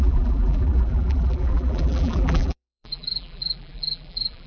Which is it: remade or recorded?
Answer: remade